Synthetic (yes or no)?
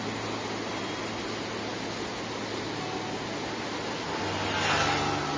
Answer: no